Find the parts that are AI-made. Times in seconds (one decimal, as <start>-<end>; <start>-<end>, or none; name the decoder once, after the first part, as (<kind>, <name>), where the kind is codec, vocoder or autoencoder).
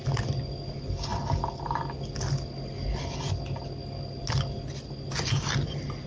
none